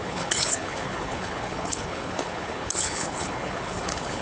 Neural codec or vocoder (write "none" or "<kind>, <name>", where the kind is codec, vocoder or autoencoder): codec, HILCodec